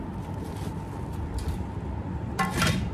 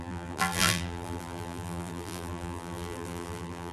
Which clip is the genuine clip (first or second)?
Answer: first